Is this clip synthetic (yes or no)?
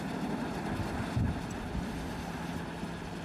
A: no